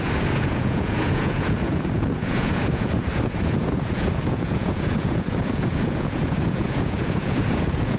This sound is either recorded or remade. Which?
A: remade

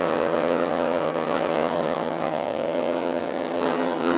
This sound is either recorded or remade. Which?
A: remade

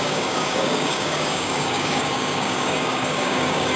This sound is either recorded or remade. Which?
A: remade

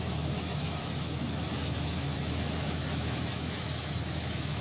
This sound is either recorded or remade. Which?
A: remade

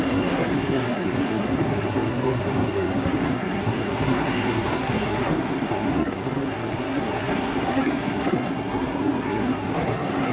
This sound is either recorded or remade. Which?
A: remade